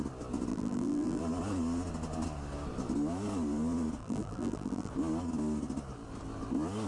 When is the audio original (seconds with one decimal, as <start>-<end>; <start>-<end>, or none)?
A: 0.0-0.5; 1.2-4.0; 4.9-6.9